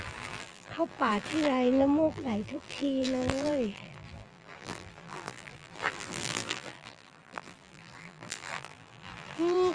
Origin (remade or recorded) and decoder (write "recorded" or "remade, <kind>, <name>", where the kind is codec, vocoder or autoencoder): remade, vocoder, BigVGAN v2